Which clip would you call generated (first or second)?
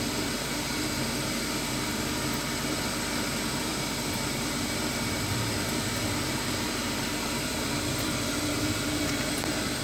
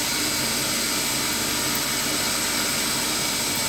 first